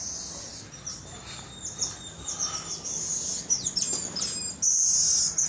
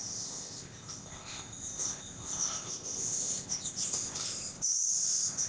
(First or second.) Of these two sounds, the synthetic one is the second